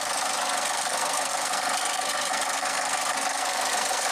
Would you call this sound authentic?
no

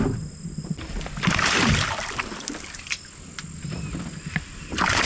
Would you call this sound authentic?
yes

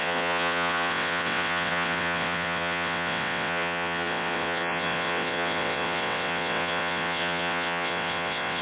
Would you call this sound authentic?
no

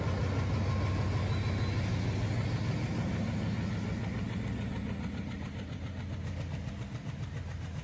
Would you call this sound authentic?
yes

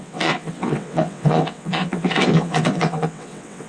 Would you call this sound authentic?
no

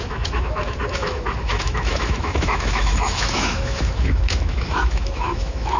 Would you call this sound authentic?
no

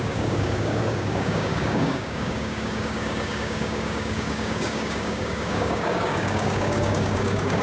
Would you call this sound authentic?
no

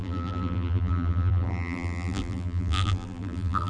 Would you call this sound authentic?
no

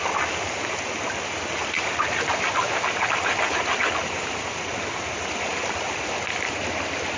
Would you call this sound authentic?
yes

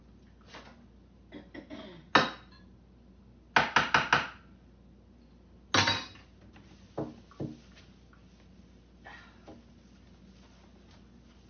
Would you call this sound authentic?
yes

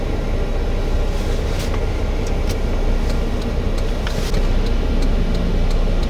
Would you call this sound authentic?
yes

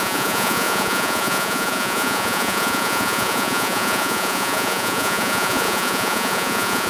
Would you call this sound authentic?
no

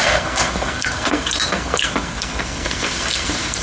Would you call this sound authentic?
no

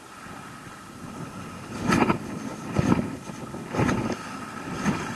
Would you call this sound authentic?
yes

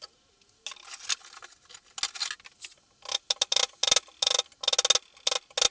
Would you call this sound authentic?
yes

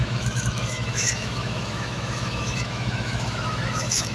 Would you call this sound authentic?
no